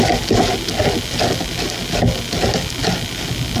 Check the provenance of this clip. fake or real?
real